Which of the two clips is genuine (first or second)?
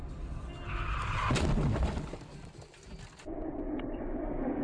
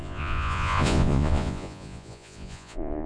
first